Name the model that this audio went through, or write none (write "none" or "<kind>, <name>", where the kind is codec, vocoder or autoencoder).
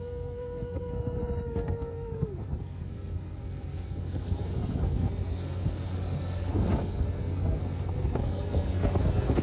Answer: codec, SNAC